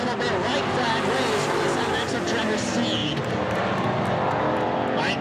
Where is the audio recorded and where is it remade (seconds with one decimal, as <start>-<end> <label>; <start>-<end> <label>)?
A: 0.0-3.0 recorded; 3.0-5.2 remade